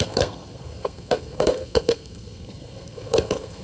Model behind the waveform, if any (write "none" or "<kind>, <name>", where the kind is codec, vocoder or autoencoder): codec, SNAC